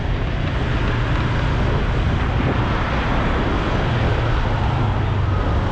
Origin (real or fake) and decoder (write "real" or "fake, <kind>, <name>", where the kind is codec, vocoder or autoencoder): real